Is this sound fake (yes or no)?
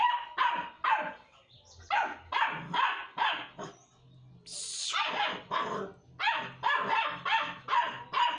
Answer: no